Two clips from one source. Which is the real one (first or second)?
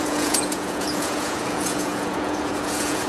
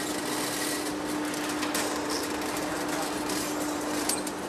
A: second